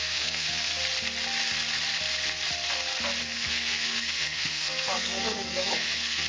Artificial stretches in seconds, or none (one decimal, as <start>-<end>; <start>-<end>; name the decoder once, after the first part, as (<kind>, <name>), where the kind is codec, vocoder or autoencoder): 0.0-0.7 (codec, SNAC); 3.2-6.3